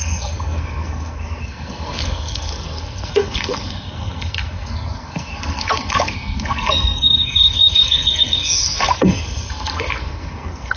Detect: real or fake fake